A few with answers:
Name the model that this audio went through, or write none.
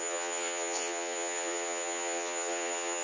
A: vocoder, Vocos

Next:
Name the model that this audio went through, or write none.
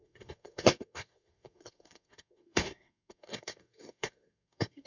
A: codec, SNAC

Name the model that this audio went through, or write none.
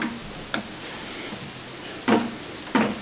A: none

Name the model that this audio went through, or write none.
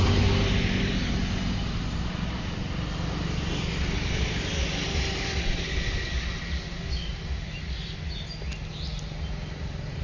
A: none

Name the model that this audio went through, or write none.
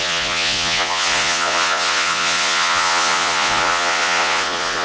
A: vocoder, Vocos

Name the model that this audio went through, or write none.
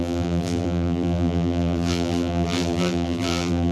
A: vocoder, BigVGAN v2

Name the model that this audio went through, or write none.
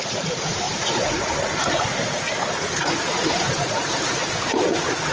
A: vocoder, Vocos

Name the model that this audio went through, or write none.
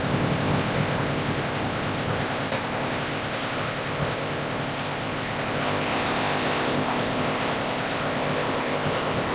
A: codec, ZipCodec